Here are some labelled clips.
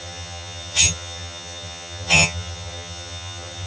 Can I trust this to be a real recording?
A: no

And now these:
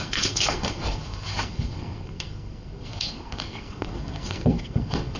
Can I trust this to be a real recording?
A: no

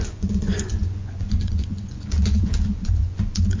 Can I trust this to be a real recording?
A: no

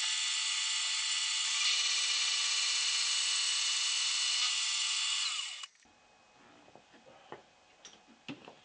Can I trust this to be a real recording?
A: yes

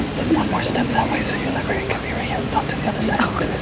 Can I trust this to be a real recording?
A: no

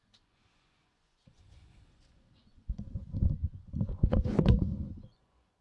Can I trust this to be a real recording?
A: no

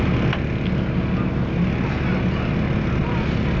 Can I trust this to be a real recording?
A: yes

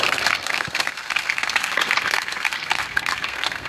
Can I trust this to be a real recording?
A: no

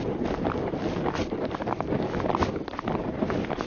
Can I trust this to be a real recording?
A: yes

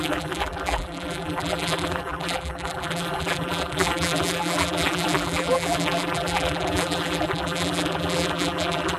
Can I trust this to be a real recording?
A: no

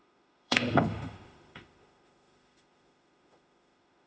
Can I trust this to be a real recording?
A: no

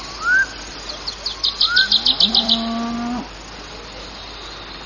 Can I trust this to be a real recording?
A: yes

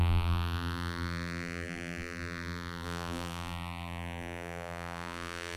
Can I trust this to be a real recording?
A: no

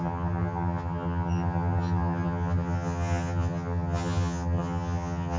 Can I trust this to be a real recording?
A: no